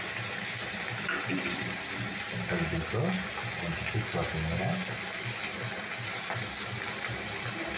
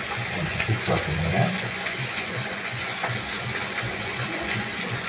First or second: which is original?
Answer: first